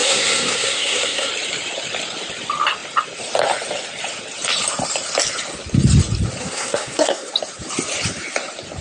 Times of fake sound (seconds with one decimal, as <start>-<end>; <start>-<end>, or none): 0.0-1.3; 6.4-7.3